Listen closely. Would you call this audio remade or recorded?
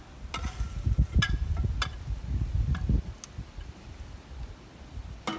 recorded